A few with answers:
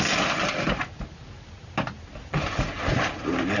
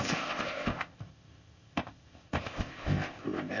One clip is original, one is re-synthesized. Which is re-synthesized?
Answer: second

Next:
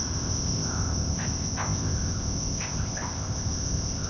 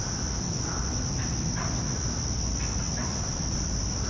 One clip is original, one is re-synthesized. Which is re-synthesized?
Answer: first